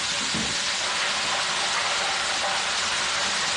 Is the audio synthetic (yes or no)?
no